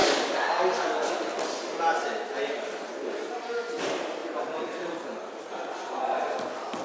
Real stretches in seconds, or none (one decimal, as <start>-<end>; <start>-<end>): 1.0-6.8